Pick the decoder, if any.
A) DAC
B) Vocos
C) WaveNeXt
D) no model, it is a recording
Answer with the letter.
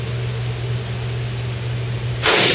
D